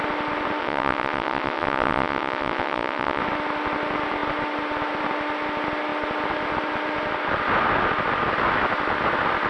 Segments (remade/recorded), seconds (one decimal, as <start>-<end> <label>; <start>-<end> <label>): 0.0-0.6 recorded; 0.6-3.2 remade; 3.2-9.5 recorded